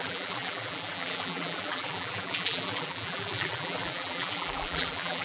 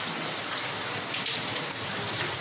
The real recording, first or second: second